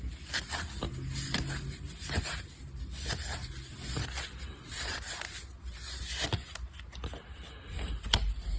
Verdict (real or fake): real